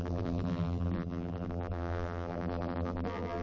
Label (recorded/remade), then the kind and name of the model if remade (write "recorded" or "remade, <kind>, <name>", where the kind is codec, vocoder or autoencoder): remade, vocoder, BigVGAN v2